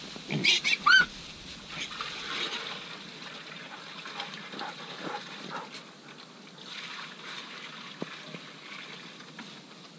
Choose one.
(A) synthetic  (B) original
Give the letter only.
B